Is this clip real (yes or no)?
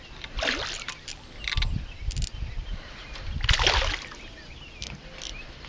yes